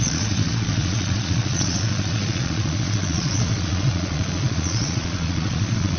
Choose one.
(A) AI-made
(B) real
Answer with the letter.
A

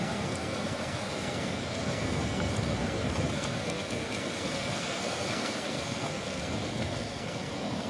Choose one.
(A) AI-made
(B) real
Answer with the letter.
A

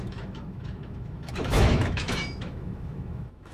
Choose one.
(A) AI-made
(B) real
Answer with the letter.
A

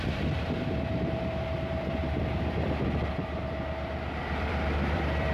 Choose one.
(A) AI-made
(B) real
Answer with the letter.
A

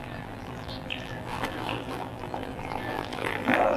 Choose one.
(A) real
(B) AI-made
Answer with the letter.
B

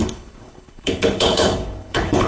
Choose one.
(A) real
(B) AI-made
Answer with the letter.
B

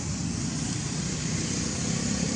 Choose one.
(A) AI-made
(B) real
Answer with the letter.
B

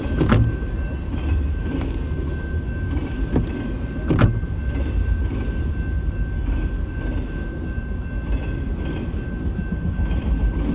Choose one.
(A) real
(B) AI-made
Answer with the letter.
A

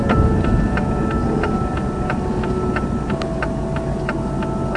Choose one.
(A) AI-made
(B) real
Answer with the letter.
B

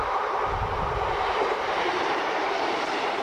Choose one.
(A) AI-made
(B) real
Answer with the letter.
A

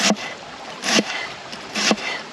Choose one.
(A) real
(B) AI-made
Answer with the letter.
B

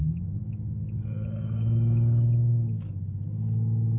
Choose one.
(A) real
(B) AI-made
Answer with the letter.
A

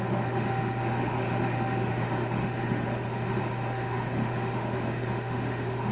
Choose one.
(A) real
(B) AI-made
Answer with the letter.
B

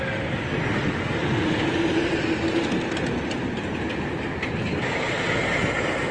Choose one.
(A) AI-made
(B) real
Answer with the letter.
B